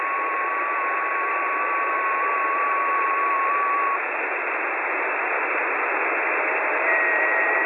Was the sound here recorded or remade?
remade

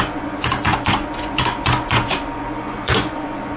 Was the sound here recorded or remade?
remade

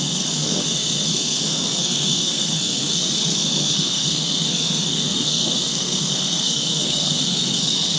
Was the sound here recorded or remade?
remade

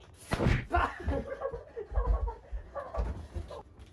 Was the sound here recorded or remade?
recorded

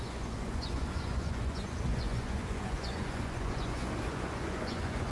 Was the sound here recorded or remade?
remade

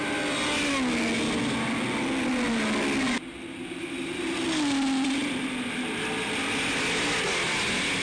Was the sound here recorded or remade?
recorded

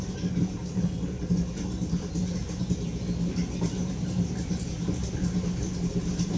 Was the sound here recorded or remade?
recorded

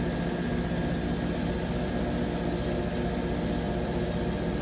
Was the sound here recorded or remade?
recorded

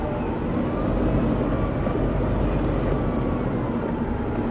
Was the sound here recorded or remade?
recorded